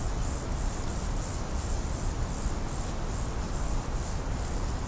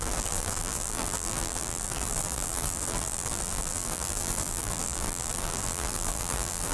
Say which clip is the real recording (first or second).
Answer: first